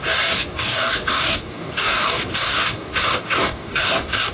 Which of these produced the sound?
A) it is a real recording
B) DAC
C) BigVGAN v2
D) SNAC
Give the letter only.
B